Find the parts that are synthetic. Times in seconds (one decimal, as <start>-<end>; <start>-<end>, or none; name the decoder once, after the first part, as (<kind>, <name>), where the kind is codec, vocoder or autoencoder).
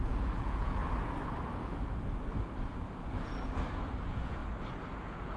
0.0-0.8 (vocoder, Vocos); 4.0-4.4; 5.0-5.4